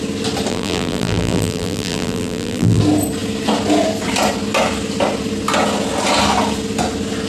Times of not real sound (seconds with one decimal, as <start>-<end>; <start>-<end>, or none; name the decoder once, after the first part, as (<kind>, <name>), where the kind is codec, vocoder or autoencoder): 0.5-2.8 (vocoder, BigVGAN v2)